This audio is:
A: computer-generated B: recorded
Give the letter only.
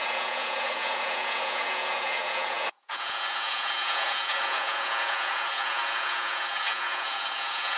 A